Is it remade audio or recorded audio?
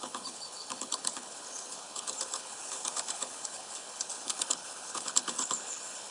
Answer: remade